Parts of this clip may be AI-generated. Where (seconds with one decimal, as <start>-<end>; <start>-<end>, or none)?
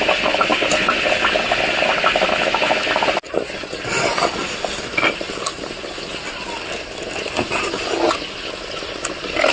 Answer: none